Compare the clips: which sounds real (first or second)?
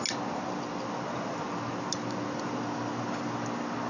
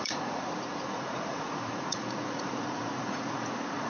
first